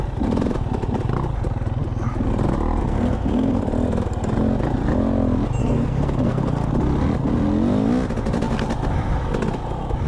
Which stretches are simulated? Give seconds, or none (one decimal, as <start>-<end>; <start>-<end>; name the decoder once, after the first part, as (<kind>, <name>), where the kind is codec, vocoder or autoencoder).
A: 2.8-3.6 (codec, SNAC); 5.6-6.7